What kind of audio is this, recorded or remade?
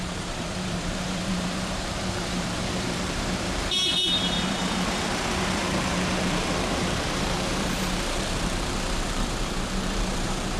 remade